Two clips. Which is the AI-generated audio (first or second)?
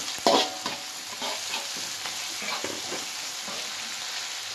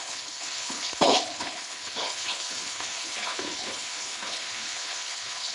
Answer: second